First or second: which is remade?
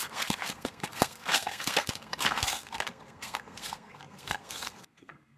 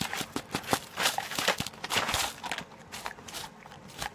first